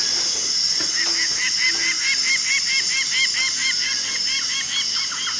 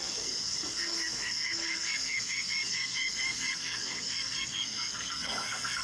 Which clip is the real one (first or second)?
first